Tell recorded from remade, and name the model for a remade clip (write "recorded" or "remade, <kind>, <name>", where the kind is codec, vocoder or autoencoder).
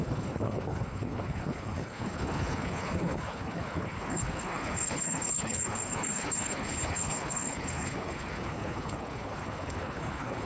remade, codec, HILCodec